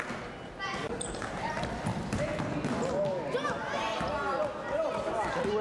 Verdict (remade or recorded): recorded